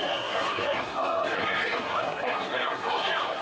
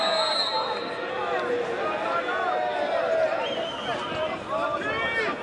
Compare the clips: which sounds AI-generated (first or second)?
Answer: first